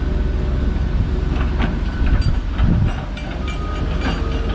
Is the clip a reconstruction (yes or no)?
no